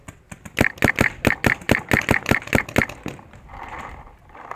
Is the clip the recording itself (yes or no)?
yes